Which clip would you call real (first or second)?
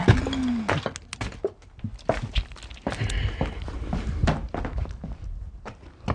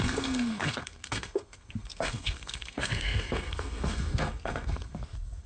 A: first